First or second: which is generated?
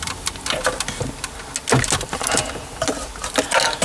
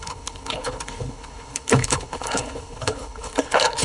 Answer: second